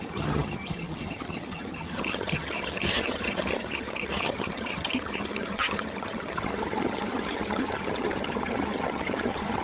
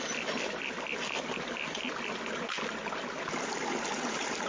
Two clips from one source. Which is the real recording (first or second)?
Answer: second